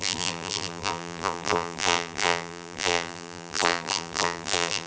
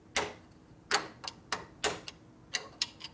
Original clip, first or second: second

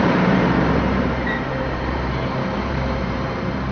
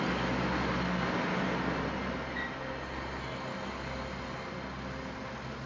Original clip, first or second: second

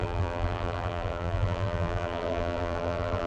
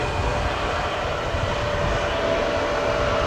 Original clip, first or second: second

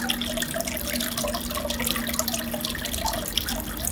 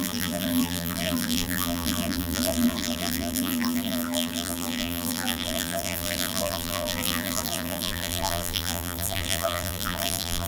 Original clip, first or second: first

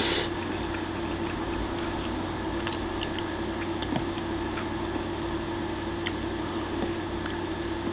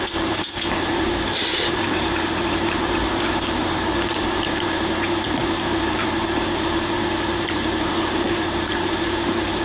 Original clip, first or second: first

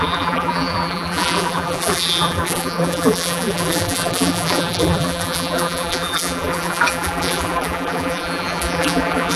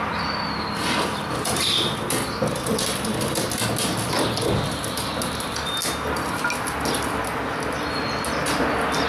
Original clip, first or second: second